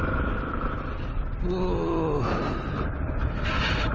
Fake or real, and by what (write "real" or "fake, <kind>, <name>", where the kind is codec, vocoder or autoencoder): real